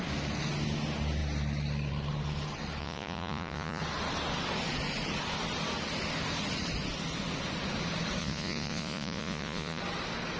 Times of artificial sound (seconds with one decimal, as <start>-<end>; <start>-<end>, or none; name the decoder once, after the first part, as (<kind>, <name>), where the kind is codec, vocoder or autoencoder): 2.8-3.8 (vocoder, Vocos); 8.2-9.8